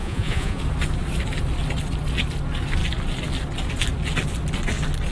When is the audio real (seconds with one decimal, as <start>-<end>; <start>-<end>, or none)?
0.6-5.1